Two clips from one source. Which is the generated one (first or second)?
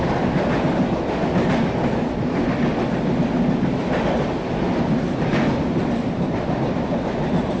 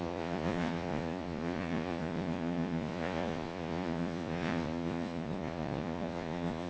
second